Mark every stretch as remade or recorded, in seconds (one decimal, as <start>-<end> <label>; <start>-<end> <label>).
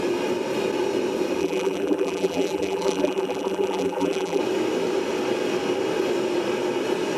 0.0-1.4 recorded; 1.4-4.4 remade; 4.4-7.2 recorded